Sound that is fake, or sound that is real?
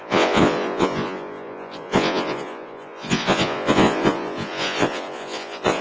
fake